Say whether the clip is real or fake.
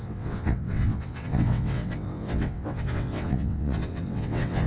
fake